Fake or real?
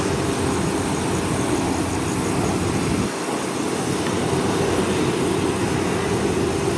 real